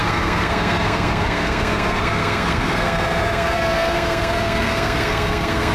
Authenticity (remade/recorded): remade